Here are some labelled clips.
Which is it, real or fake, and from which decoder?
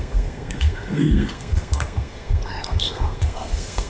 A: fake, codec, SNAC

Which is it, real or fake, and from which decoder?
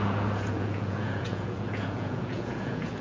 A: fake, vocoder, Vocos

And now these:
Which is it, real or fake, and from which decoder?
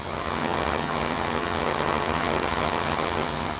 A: fake, vocoder, HiFi-GAN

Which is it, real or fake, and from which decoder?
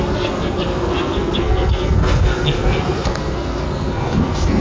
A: fake, codec, SNAC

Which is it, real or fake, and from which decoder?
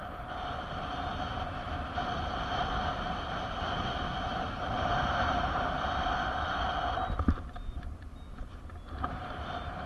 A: real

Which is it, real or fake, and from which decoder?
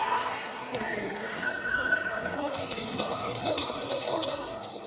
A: fake, codec, SNAC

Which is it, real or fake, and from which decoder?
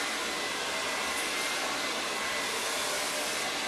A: real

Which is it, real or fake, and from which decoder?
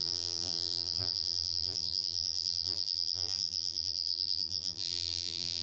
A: fake, vocoder, BigVGAN v2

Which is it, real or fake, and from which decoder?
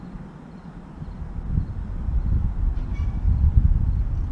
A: real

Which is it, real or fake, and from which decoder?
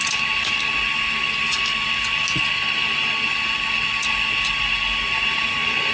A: real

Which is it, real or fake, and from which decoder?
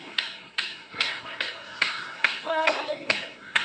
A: fake, codec, SNAC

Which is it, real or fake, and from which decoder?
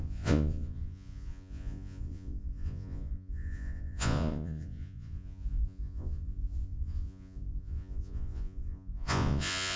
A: fake, vocoder, Vocos